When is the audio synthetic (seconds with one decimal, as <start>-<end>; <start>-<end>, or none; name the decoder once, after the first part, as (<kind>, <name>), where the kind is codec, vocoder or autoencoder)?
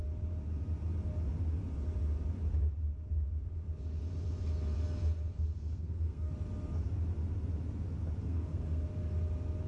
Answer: 5.5-6.3 (codec, SNAC); 8.2-8.8